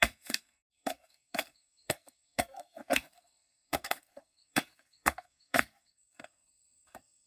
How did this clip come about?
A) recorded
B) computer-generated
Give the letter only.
B